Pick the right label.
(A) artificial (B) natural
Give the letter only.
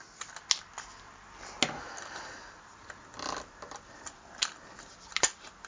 B